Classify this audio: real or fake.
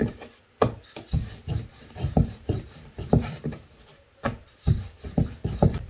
fake